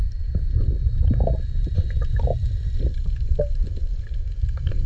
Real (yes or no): yes